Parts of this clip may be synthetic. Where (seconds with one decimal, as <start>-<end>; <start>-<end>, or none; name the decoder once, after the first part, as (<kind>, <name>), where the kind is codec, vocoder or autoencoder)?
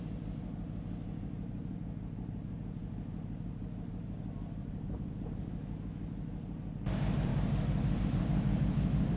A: 0.0-7.3 (vocoder, BigVGAN v2); 8.0-9.2